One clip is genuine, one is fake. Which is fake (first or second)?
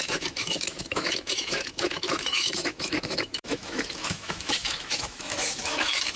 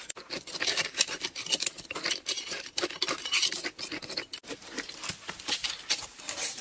first